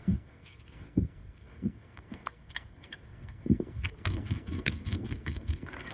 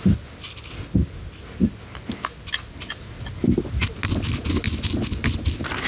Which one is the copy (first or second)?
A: first